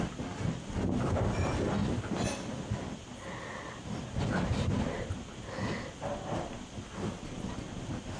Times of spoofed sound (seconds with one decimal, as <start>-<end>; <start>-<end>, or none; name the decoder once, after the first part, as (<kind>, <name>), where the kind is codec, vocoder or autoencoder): none